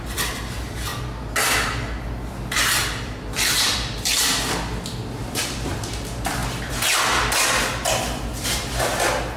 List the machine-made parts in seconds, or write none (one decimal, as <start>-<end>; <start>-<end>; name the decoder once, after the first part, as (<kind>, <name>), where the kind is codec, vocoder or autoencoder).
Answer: 0.0-0.9 (vocoder, BigVGAN v2); 2.3-6.4; 7.9-9.4